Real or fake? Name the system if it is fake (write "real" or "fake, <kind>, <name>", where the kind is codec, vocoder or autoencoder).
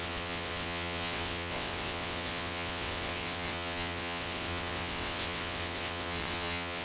fake, vocoder, WaveNeXt